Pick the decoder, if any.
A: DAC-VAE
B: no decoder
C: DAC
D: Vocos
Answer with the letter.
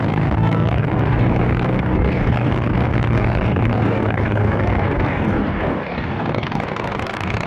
C